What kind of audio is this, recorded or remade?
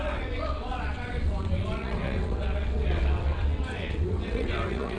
remade